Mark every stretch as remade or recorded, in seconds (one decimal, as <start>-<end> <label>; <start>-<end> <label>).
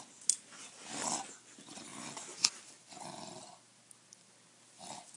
0.0-5.2 recorded